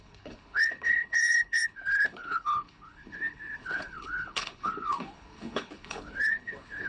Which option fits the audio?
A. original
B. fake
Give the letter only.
B